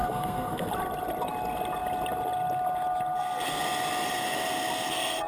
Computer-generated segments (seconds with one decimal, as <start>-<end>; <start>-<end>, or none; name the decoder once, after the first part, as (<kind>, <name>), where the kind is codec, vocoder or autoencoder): 0.0-0.7 (codec, SNAC)